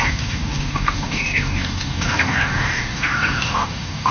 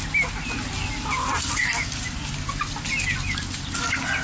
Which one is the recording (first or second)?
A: second